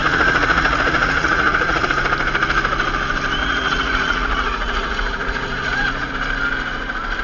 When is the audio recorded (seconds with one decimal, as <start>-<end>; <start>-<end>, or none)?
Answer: 1.9-3.4; 6.1-7.2